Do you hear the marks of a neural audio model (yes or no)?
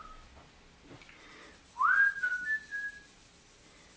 no